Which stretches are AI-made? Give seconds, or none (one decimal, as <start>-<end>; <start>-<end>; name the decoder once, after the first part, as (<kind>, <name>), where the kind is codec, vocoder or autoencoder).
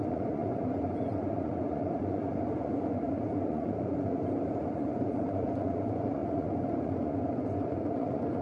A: 0.0-4.2 (vocoder, Vocos); 4.7-8.4